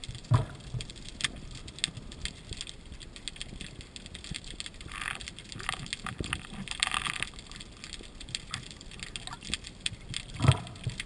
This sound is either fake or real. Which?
real